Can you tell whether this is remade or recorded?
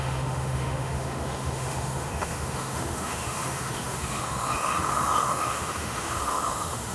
remade